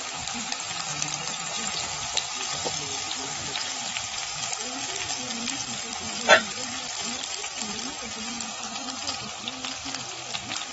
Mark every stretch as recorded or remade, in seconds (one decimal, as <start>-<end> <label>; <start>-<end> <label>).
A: 0.0-1.4 remade; 1.4-3.7 recorded; 3.7-4.2 remade; 4.2-5.0 recorded; 5.0-10.7 remade